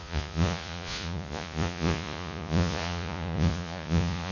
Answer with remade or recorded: remade